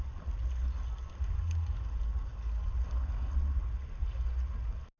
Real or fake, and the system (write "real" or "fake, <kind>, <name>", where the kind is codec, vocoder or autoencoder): real